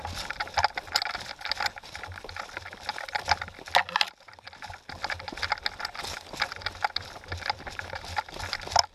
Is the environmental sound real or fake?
real